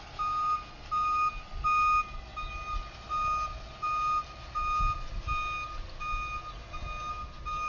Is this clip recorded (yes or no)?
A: yes